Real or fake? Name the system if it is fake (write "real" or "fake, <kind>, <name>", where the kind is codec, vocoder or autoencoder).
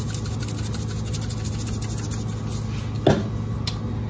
real